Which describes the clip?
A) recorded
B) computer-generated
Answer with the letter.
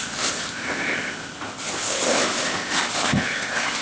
B